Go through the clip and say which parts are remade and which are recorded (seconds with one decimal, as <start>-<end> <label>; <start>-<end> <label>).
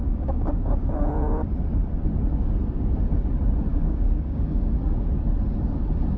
0.0-0.7 remade; 0.7-3.7 recorded; 3.7-4.8 remade; 4.8-6.2 recorded